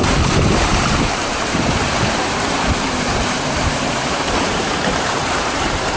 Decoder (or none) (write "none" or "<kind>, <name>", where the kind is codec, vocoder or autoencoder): vocoder, BigVGAN v2